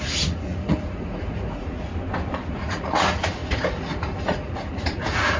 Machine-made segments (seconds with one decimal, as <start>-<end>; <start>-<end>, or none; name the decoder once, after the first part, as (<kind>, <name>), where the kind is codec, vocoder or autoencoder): 0.0-1.9 (vocoder, Vocos); 2.5-5.4